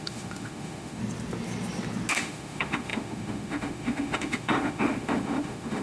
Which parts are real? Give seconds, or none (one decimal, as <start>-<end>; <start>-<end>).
1.0-2.1